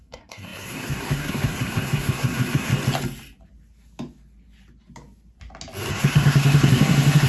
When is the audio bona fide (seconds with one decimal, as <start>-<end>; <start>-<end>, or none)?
2.7-5.9